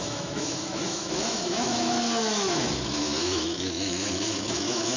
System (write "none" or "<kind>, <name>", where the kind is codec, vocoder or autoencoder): autoencoder, DAC-VAE